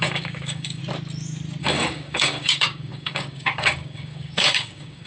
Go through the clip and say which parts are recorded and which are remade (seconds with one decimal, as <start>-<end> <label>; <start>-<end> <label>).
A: 0.0-0.8 remade; 0.8-1.6 recorded; 1.6-5.1 remade